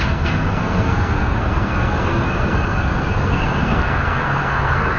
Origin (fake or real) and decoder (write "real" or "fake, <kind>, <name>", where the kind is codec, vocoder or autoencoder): fake, codec, SNAC